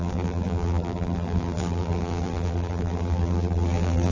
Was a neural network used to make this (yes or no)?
yes